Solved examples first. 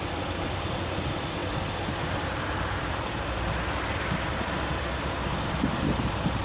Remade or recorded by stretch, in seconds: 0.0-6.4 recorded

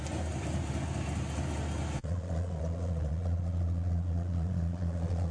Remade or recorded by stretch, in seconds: 0.0-2.0 recorded; 2.0-5.3 remade

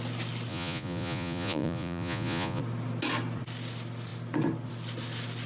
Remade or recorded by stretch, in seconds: 0.0-0.5 recorded; 0.5-2.6 remade; 2.6-5.5 recorded

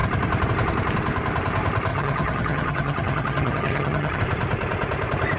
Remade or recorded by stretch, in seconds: 0.0-1.9 recorded; 1.9-4.2 remade; 4.2-5.4 recorded

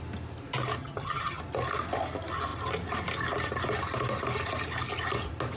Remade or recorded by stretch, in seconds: 0.0-0.8 recorded; 0.8-1.4 remade; 1.4-5.6 recorded

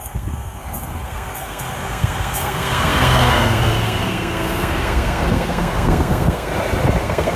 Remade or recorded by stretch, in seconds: 0.0-6.5 remade; 6.5-7.0 recorded; 7.0-7.4 remade

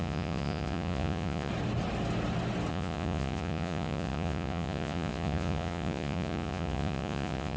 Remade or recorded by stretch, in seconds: 0.0-1.5 remade; 1.5-2.7 recorded; 2.7-7.6 remade